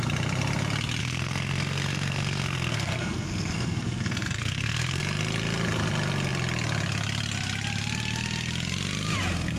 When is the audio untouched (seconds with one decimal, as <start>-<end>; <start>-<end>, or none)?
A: 0.0-1.0; 5.0-9.6